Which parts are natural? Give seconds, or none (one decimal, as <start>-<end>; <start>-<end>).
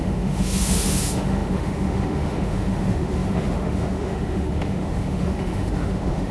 none